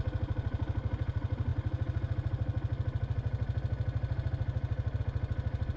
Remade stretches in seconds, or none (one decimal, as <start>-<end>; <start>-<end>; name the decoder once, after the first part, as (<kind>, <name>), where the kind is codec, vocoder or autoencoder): none